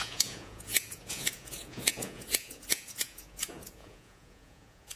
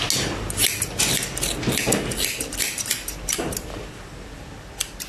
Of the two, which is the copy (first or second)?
first